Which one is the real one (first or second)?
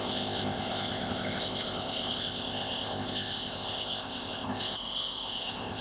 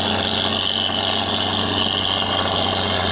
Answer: second